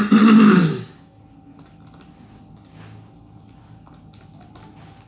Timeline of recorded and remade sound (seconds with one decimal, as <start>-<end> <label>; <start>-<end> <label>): 0.0-0.6 recorded; 0.6-1.2 remade; 1.2-5.1 recorded